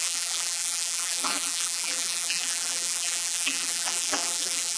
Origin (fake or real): fake